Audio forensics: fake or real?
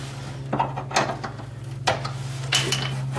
real